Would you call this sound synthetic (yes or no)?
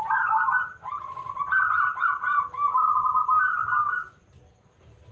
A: no